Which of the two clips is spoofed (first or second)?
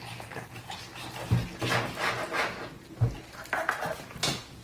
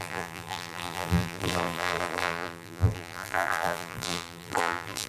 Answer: second